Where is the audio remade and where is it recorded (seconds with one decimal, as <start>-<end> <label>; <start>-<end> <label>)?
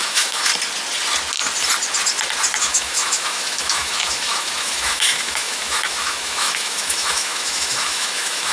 0.0-0.5 remade; 0.5-2.6 recorded; 2.6-8.5 remade